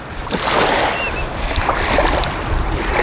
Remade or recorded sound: recorded